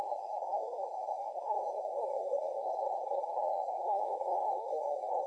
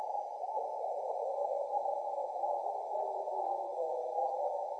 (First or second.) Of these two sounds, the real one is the second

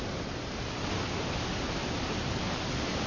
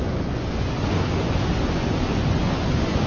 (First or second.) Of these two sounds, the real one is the first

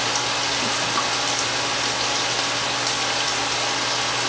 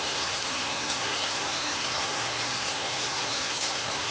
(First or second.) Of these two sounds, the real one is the first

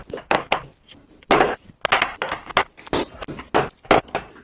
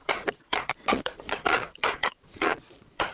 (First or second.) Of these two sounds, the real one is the first